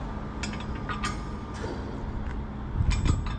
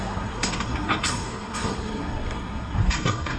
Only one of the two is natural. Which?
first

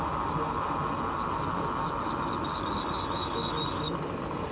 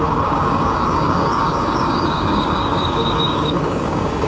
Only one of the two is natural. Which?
first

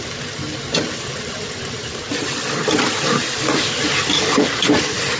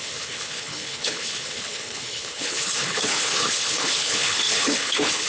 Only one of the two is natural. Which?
first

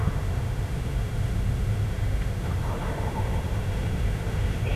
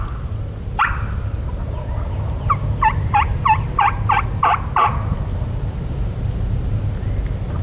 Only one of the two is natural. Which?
second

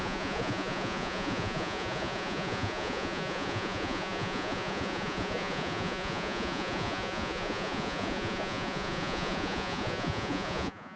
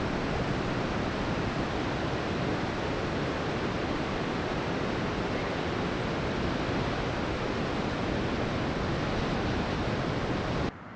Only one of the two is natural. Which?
second